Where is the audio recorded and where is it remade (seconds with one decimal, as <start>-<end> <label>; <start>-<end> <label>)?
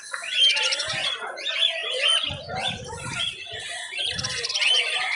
0.0-5.2 recorded